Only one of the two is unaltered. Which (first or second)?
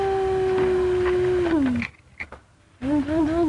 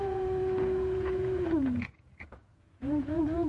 first